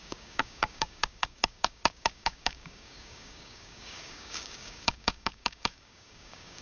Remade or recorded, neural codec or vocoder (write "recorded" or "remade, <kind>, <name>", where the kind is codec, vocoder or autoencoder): remade, codec, DAC